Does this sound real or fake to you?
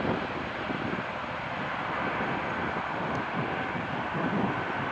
real